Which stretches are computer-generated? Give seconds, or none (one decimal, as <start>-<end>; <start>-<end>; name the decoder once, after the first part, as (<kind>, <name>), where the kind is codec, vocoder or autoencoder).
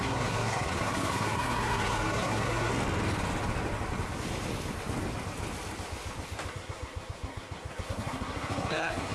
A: 0.0-2.7 (codec, SNAC); 6.5-9.1